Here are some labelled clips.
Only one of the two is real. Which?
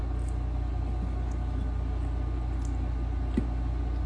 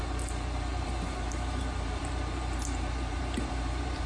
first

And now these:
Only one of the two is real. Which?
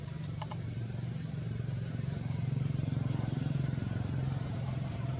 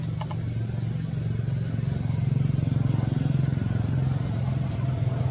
second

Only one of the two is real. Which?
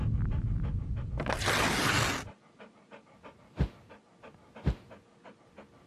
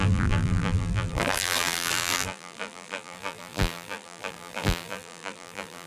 first